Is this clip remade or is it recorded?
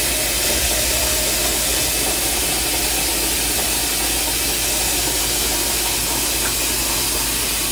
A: recorded